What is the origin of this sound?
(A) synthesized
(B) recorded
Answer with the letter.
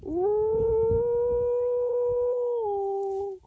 B